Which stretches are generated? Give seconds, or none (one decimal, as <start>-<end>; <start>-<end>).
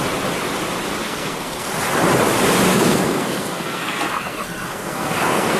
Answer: 1.0-1.7; 2.7-5.6